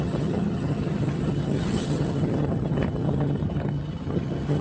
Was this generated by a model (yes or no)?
yes